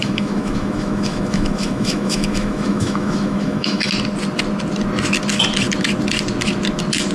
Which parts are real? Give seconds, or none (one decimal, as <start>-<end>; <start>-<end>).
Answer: 3.9-7.1